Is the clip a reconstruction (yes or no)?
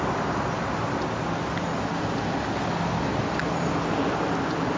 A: no